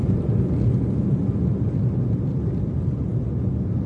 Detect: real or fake real